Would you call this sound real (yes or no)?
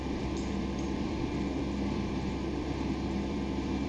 no